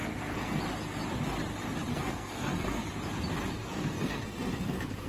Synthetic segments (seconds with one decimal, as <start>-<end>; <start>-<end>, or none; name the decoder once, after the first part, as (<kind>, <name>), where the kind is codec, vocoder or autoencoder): 0.0-0.6 (codec, SNAC); 1.9-2.9; 3.6-5.1